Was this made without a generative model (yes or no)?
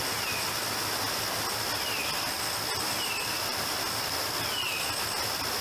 yes